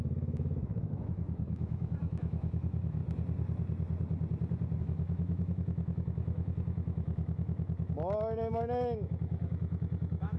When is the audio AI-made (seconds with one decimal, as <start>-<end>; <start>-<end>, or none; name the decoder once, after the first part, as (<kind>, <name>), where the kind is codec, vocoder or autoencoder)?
0.0-3.0 (autoencoder, DAC-VAE); 4.8-10.4